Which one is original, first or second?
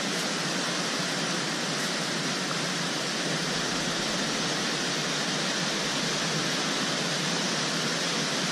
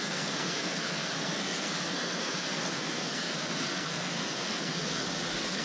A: first